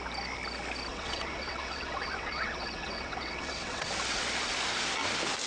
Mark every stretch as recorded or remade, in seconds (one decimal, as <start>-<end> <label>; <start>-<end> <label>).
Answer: 0.0-0.9 recorded; 0.9-3.9 remade; 3.9-5.5 recorded